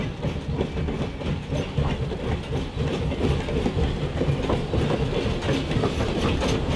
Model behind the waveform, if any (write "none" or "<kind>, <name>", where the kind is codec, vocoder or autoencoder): none